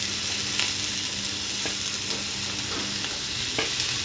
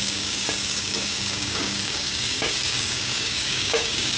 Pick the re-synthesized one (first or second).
second